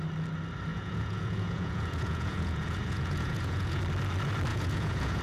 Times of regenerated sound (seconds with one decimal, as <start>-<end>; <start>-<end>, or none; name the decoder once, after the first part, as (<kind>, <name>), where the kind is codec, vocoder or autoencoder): 0.7-3.8 (vocoder, Vocos); 4.5-5.2